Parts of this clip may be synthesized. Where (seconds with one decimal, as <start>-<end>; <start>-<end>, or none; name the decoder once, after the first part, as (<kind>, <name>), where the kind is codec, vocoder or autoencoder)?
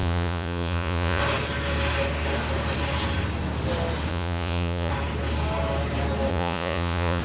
0.0-1.2 (vocoder, Vocos); 4.1-4.9; 6.3-7.2